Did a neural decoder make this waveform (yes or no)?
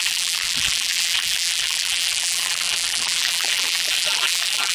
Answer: yes